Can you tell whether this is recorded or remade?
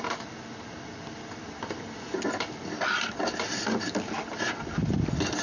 recorded